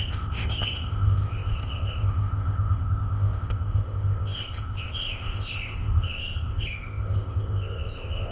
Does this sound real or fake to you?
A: fake